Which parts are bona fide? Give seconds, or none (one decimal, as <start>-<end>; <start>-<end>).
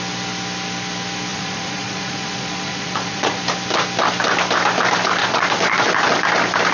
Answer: 0.0-1.3; 3.4-5.2; 5.9-6.7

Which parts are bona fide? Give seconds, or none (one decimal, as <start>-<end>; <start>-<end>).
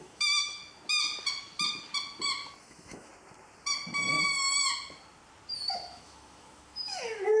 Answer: 0.6-2.6; 3.1-5.6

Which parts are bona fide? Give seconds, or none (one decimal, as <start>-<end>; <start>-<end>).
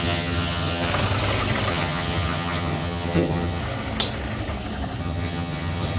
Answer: 0.9-1.7; 3.6-5.0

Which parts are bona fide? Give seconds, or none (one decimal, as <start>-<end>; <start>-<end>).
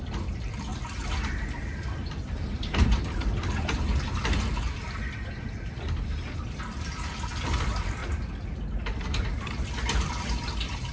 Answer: 0.7-1.6; 8.0-9.2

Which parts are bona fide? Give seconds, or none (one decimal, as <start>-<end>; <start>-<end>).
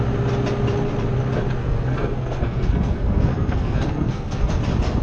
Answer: 0.0-1.6; 4.6-5.0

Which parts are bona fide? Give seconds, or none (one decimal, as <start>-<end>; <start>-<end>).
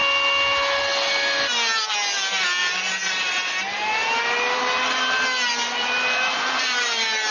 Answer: 0.0-2.6